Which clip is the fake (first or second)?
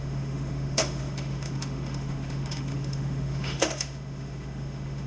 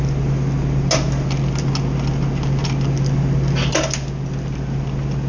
first